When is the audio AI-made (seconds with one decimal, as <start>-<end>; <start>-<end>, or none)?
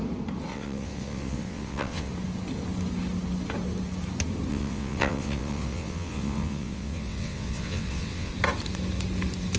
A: 0.5-2.1; 4.5-8.3